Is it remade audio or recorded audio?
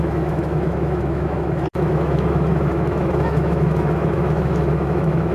remade